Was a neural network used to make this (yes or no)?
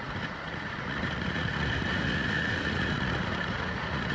yes